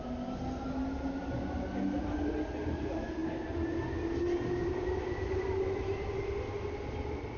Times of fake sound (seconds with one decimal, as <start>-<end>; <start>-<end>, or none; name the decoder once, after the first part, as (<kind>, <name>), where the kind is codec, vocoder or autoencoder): none